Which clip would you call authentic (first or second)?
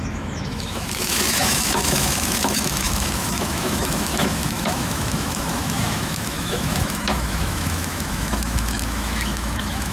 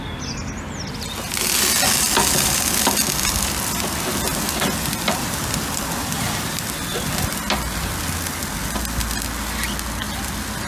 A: second